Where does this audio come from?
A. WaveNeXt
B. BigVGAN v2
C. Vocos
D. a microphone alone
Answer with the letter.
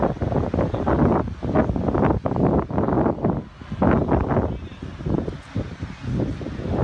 D